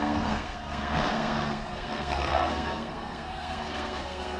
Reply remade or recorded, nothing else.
remade